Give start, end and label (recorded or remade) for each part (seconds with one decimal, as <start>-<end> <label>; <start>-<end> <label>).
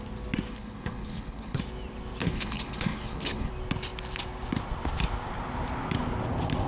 0.0-0.5 recorded; 0.5-1.6 remade; 1.6-2.2 recorded; 2.2-3.5 remade; 3.5-6.7 recorded